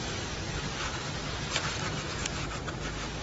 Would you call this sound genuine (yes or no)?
yes